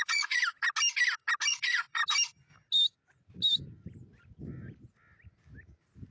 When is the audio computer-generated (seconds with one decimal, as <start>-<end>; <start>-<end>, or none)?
0.0-0.4; 1.5-2.0